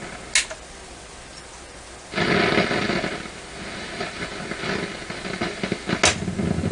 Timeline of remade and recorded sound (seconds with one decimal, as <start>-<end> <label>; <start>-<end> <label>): 0.0-6.7 recorded